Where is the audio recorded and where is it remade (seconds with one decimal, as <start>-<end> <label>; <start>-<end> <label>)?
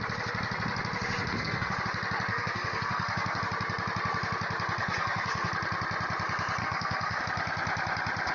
0.0-1.3 recorded; 1.3-1.8 remade; 1.8-2.3 recorded; 2.3-3.4 remade; 3.4-4.8 recorded; 4.8-5.5 remade; 5.5-6.6 recorded; 6.6-7.2 remade; 7.2-8.3 recorded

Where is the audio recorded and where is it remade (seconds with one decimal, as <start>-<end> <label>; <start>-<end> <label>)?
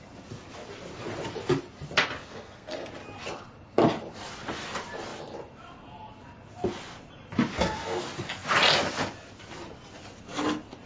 0.0-2.2 recorded; 2.2-2.9 remade; 2.9-7.5 recorded; 7.5-8.0 remade; 8.0-10.9 recorded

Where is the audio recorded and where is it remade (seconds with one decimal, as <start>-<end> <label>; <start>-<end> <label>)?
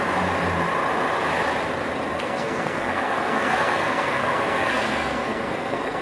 0.0-2.1 recorded; 2.1-6.0 remade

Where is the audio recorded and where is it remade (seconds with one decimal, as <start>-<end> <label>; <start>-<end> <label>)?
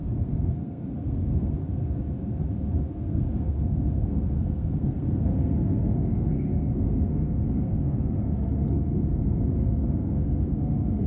0.0-1.6 remade; 1.6-2.9 recorded; 2.9-11.1 remade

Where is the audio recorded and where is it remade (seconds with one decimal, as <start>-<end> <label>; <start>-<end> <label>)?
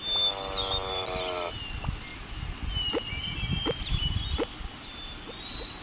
0.0-5.8 recorded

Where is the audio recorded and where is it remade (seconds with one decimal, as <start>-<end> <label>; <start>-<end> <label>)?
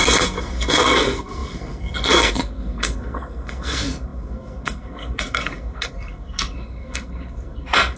0.0-8.0 remade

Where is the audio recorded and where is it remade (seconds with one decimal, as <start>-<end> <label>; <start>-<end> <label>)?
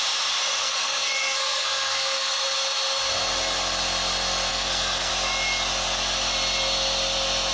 0.0-0.6 recorded; 0.6-2.4 remade; 2.4-4.5 recorded; 4.5-5.1 remade; 5.1-7.5 recorded